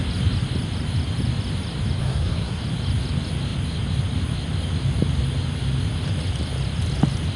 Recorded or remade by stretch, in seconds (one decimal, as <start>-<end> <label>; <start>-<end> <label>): 0.0-2.0 recorded; 2.0-2.6 remade; 2.6-7.4 recorded